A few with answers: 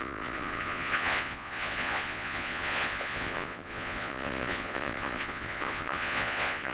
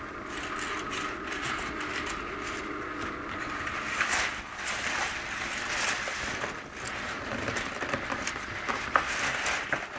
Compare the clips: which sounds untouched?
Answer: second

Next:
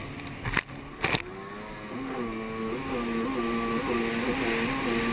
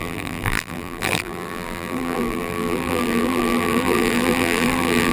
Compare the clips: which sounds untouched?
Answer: first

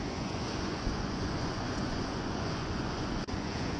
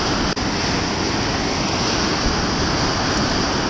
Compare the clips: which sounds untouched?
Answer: second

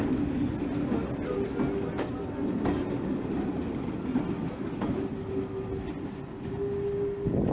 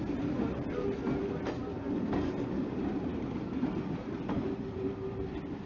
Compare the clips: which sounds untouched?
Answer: first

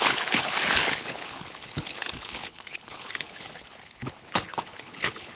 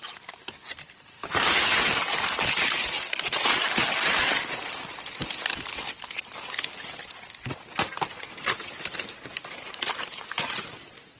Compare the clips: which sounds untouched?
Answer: second